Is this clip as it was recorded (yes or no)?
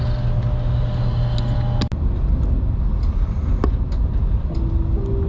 yes